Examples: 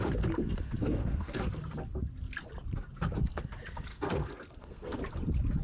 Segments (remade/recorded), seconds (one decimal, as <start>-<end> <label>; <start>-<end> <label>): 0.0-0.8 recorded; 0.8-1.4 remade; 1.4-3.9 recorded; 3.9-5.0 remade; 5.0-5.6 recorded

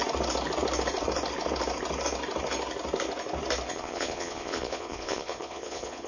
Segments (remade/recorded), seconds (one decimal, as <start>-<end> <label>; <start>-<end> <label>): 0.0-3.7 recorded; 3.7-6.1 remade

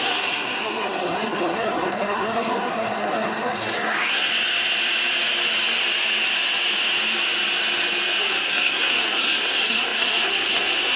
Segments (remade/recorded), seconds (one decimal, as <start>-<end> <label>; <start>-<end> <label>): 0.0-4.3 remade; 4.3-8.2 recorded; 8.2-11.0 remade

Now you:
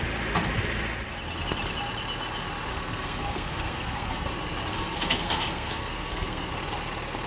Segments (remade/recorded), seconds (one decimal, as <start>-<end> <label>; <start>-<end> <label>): 0.0-2.7 recorded; 2.7-4.3 remade; 4.3-4.7 recorded; 4.7-6.5 remade; 6.5-7.3 recorded

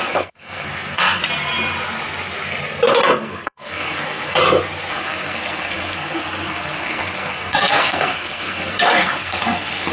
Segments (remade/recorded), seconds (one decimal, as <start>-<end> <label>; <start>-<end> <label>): 0.0-1.2 remade; 1.2-2.9 recorded; 2.9-4.4 remade; 4.4-4.9 recorded; 4.9-9.9 remade

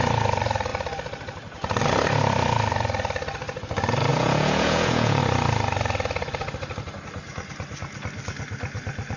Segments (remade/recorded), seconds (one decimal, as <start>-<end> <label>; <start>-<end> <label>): 0.0-4.1 recorded; 4.1-5.2 remade; 5.2-9.2 recorded

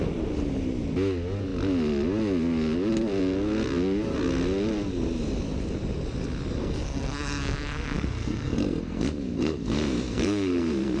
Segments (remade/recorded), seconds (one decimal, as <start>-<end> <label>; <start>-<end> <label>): 0.0-6.6 recorded; 6.6-11.0 remade

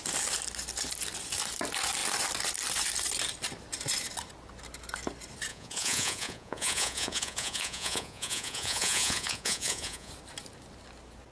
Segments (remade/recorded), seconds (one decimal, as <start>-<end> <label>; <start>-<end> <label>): 0.0-5.5 recorded; 5.5-10.1 remade; 10.1-11.3 recorded